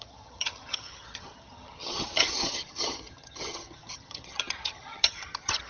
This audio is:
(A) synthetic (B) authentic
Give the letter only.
A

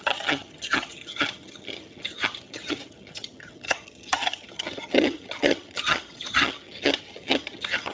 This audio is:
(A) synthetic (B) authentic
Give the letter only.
A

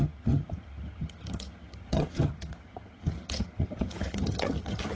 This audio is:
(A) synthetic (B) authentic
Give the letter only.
A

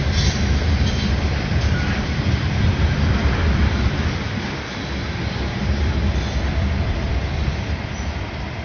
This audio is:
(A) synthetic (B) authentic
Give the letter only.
B